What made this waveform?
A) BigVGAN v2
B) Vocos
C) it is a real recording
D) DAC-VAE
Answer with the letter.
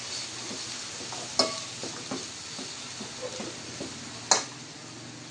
C